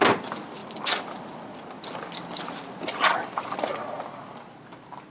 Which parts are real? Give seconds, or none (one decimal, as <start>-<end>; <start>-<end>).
0.0-5.1

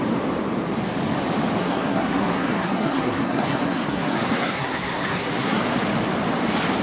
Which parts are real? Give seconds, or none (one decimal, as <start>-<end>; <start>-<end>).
0.0-1.6; 5.6-6.8

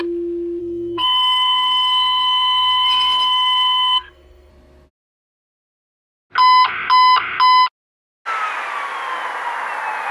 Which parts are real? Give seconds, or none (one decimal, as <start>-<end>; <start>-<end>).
0.0-0.6; 4.5-10.1

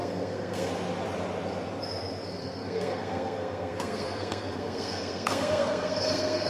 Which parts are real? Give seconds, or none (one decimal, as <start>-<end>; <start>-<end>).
0.7-2.4

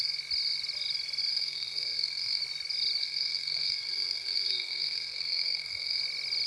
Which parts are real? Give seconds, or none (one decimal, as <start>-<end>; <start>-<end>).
0.0-1.3; 2.4-3.0; 6.0-6.5